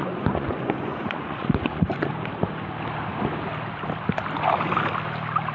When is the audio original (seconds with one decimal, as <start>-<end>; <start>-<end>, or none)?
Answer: 2.1-5.5